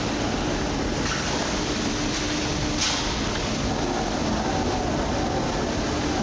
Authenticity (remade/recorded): recorded